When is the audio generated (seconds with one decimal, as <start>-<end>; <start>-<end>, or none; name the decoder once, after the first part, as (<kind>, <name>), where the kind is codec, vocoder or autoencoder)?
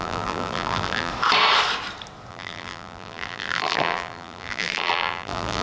0.0-1.1 (vocoder, BigVGAN v2); 2.3-5.6